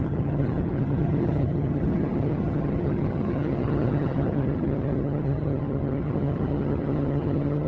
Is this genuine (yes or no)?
no